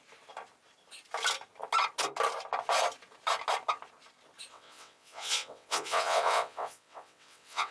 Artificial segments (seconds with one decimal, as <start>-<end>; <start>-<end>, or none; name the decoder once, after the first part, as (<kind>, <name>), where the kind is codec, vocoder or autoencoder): 4.5-7.7 (vocoder, WaveNeXt)